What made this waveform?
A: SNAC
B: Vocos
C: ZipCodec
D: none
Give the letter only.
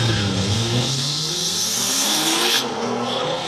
A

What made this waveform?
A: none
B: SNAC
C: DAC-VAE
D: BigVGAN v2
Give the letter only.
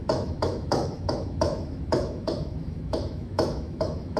C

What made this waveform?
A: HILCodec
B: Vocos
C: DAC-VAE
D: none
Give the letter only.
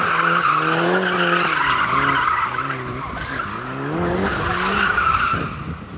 D